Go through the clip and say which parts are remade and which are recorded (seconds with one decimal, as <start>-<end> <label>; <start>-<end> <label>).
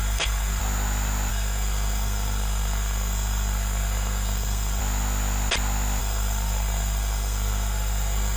0.0-0.6 remade; 0.6-1.3 recorded; 1.3-4.8 remade; 4.8-6.0 recorded; 6.0-8.4 remade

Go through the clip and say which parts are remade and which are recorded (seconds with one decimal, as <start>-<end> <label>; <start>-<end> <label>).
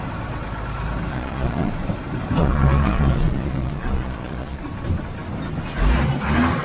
0.0-1.1 recorded; 1.1-1.7 remade; 1.7-2.4 recorded; 2.4-4.6 remade; 4.6-6.6 recorded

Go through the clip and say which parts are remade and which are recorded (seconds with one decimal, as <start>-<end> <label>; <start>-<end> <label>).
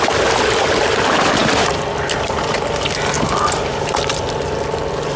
0.0-5.2 recorded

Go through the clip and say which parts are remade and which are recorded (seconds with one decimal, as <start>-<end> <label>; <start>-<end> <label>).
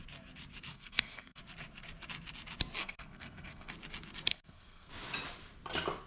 0.0-0.7 recorded; 0.7-1.4 remade; 1.4-2.8 recorded; 2.8-3.7 remade; 3.7-4.3 recorded; 4.3-4.9 remade; 4.9-6.1 recorded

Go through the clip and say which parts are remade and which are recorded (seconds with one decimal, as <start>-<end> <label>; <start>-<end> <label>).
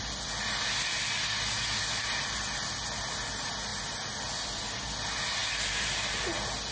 0.0-6.7 recorded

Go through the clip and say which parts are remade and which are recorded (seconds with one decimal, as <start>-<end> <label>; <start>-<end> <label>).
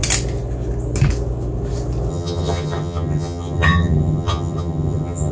0.0-2.1 recorded; 2.1-5.3 remade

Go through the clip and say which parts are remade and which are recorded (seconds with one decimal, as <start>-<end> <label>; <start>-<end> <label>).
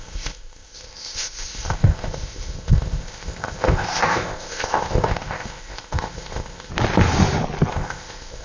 0.0-6.7 remade; 6.7-7.7 recorded; 7.7-8.4 remade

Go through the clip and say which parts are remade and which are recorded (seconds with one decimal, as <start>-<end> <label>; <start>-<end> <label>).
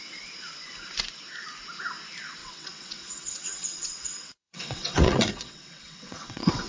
0.0-2.4 recorded; 2.4-6.7 remade